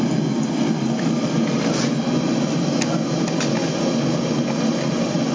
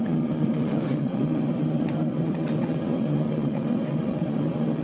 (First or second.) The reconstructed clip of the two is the second